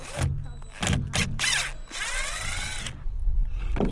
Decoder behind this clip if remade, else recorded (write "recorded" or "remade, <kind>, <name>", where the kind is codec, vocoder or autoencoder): recorded